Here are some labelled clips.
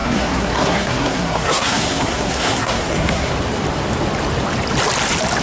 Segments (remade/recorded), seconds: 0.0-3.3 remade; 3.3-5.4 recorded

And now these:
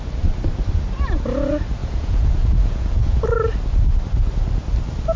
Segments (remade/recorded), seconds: 0.0-1.8 recorded; 1.8-3.2 remade; 3.2-5.2 recorded

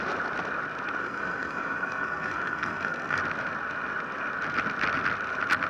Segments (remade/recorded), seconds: 0.0-1.0 recorded; 1.0-3.2 remade; 3.2-5.7 recorded

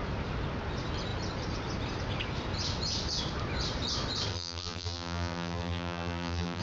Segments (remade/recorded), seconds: 0.0-4.3 recorded; 4.3-6.6 remade

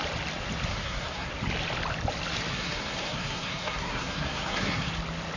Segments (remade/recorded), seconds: 0.0-0.7 recorded; 0.7-1.3 remade; 1.3-2.5 recorded; 2.5-4.9 remade; 4.9-5.4 recorded

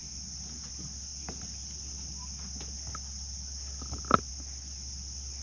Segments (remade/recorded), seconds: 0.0-5.4 recorded

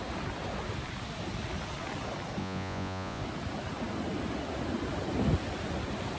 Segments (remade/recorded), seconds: 0.0-2.4 recorded; 2.4-3.2 remade; 3.2-6.2 recorded

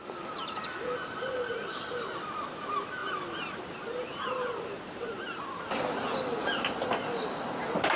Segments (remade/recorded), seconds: 0.0-8.0 recorded